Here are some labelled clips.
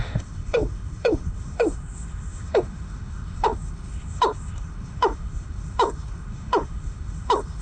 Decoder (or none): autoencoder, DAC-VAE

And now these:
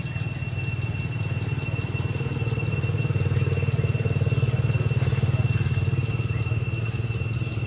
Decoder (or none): none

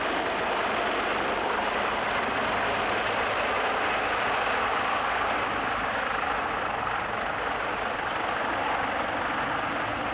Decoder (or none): none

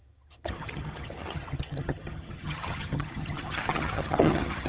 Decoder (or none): vocoder, HiFi-GAN